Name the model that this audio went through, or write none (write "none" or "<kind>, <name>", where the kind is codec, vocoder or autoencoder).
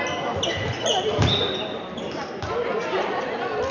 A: none